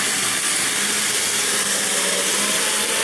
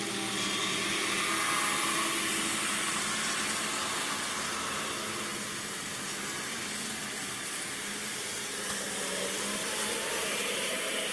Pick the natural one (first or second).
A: second